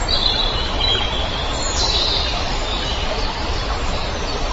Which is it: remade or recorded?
remade